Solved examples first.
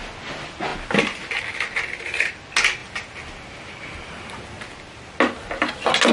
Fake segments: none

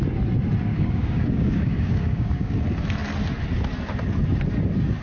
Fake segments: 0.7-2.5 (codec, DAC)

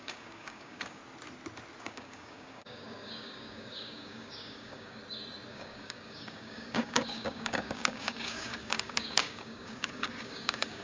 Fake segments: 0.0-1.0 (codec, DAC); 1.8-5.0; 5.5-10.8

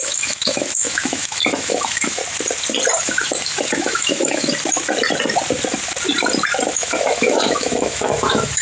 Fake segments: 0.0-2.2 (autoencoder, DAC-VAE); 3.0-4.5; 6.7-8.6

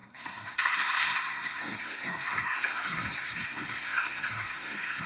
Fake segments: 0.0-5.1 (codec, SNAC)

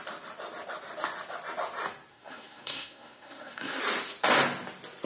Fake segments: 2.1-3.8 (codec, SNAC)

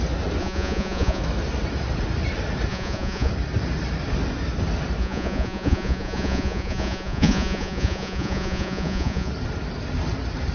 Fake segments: 0.4-1.2 (vocoder, Vocos); 2.7-3.3; 5.0-9.3

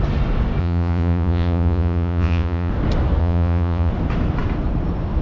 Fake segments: 0.6-2.7 (vocoder, Vocos); 3.2-3.9